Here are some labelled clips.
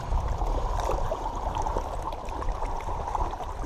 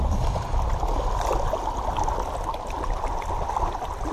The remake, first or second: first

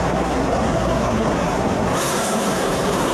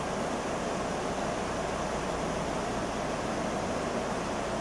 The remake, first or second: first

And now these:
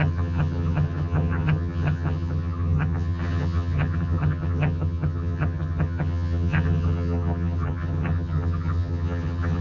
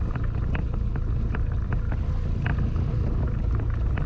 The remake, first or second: first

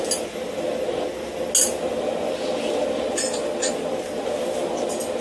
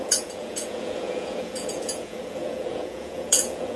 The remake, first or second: second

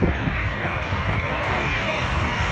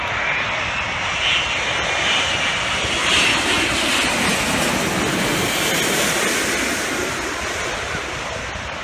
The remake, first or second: first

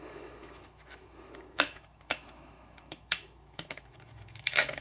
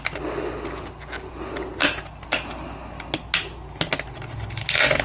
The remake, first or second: first